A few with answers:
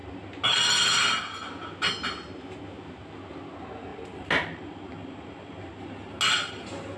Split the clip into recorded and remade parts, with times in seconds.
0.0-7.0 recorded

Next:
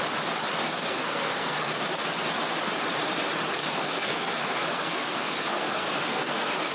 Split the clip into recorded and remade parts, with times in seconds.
0.0-0.6 recorded; 0.6-1.8 remade; 1.8-3.6 recorded; 3.6-6.7 remade

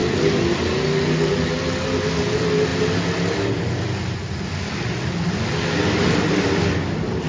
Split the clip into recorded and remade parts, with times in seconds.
0.0-7.3 recorded

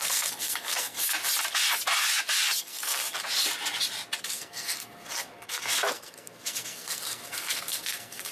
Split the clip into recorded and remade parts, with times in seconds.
0.0-1.2 remade; 1.2-2.6 recorded; 2.6-3.0 remade; 3.0-4.2 recorded; 4.2-8.3 remade

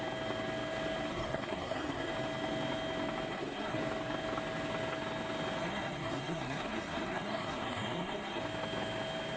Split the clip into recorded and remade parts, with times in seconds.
0.0-1.1 recorded; 1.1-2.1 remade; 2.1-3.3 recorded; 3.3-3.8 remade; 3.8-5.6 recorded; 5.6-8.4 remade; 8.4-9.4 recorded